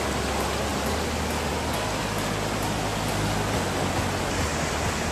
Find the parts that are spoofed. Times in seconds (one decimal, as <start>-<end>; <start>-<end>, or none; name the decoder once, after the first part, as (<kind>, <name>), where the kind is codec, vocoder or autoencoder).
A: none